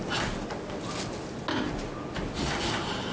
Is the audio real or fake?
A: real